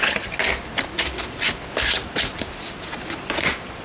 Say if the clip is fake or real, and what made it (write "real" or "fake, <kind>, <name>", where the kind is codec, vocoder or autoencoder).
real